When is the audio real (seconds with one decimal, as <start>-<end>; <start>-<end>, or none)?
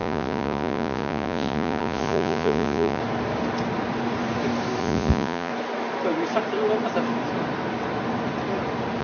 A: 3.0-4.8; 5.5-9.0